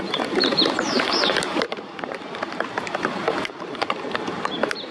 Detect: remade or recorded remade